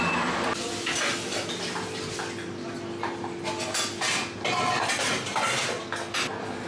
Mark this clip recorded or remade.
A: recorded